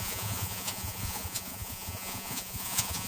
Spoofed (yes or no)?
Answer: yes